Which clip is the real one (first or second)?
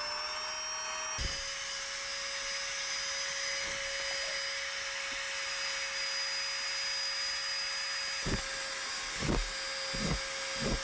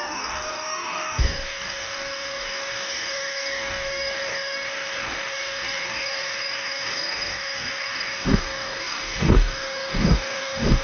first